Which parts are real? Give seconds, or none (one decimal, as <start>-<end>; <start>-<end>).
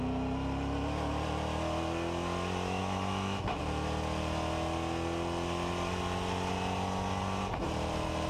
0.0-2.8; 3.6-8.3